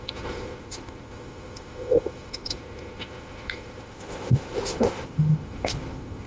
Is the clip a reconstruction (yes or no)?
yes